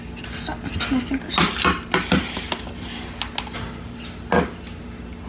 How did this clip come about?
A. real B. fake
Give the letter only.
A